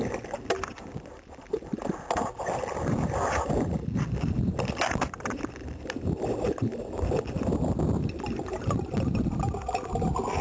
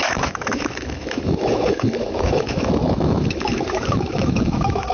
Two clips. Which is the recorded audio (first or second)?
first